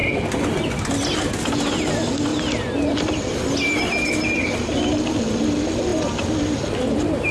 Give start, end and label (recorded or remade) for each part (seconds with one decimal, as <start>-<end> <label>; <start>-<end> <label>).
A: 0.0-7.3 recorded